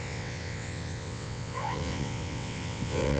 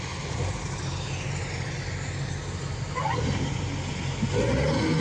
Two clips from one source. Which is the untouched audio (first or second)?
second